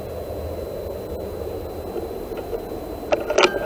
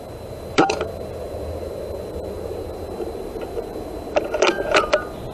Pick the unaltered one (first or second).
first